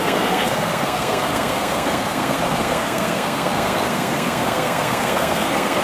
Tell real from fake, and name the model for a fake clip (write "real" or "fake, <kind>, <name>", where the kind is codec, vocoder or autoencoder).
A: fake, codec, SNAC